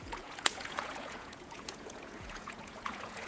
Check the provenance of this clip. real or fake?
fake